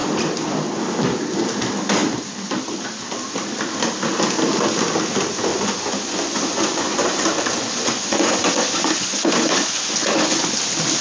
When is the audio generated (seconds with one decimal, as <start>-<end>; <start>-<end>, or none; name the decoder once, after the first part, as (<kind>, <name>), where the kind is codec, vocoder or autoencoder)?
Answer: 5.5-10.4 (vocoder, Vocos)